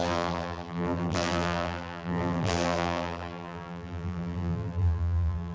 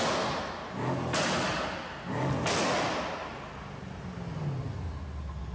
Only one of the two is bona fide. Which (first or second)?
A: second